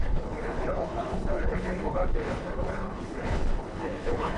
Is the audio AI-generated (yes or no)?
yes